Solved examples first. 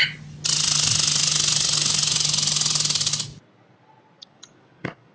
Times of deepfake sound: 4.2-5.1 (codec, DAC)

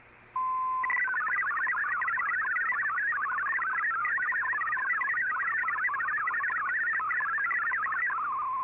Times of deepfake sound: 1.8-2.9 (autoencoder, DAC-VAE); 4.0-6.7